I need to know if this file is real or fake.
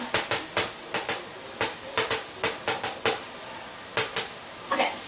real